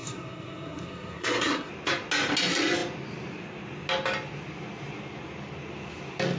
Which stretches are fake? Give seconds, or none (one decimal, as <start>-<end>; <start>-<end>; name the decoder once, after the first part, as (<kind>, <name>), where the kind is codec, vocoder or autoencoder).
0.0-1.7 (codec, SNAC)